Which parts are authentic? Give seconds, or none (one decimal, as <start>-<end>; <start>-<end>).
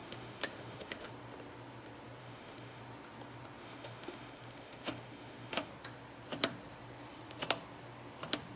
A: 1.1-2.2; 2.8-3.6; 5.7-8.6